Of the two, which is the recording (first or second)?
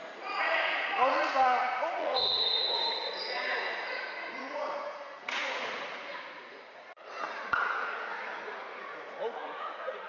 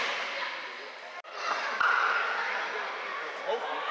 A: second